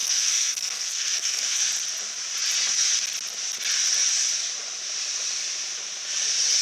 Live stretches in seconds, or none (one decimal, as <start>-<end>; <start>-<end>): 1.6-6.6